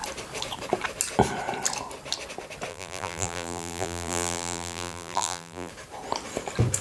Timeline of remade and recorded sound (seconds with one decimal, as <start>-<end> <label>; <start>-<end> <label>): 0.0-2.7 recorded; 2.7-5.7 remade; 5.7-6.8 recorded